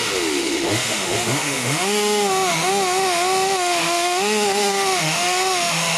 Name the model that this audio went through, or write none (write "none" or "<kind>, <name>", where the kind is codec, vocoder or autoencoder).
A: autoencoder, DAC-VAE